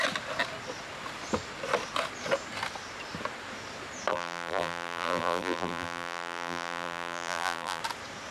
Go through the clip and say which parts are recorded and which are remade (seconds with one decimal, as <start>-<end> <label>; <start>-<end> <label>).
0.0-4.1 recorded; 4.1-7.8 remade; 7.8-8.3 recorded